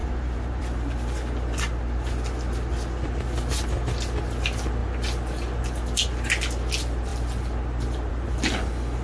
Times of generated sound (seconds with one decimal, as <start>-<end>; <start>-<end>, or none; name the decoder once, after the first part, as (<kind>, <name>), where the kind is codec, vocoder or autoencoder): 0.0-0.6 (vocoder, BigVGAN v2)